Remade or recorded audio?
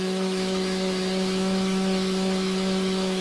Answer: remade